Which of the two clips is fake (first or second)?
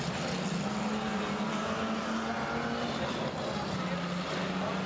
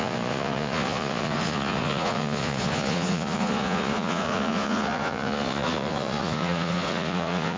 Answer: second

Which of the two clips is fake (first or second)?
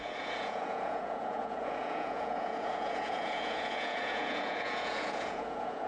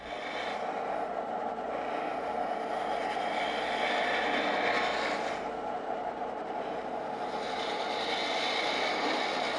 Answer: first